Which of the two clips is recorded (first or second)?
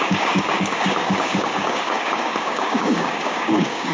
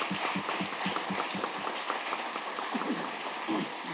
second